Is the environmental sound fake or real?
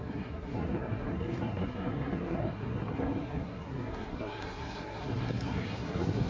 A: fake